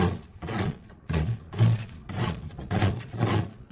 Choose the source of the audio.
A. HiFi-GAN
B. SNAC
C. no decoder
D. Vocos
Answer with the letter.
D